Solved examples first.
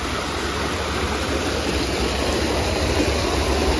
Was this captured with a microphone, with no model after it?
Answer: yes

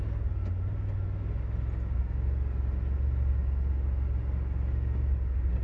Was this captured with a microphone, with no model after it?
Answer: yes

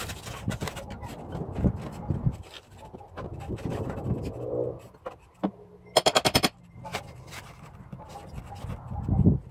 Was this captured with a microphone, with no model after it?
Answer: yes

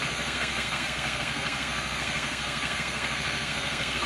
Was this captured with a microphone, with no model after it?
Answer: no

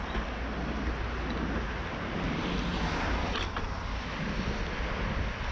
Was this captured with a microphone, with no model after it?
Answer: yes